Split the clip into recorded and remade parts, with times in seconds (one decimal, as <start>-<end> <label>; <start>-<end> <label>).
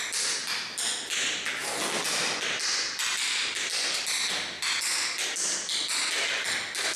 0.0-7.0 recorded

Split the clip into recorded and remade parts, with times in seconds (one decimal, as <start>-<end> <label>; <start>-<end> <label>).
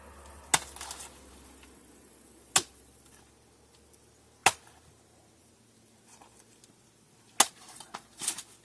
0.0-8.6 recorded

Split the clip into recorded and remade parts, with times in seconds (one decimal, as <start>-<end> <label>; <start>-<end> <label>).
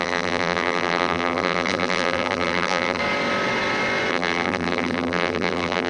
0.0-3.0 remade; 3.0-4.1 recorded; 4.1-5.9 remade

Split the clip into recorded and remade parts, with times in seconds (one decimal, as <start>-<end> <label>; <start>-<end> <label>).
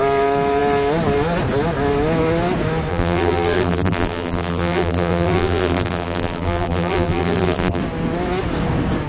0.0-2.9 recorded; 2.9-7.8 remade; 7.8-9.1 recorded